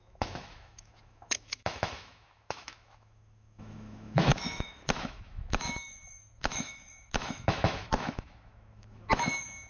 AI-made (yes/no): yes